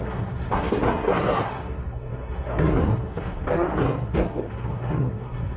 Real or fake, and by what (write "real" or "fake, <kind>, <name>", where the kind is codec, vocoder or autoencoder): fake, codec, SNAC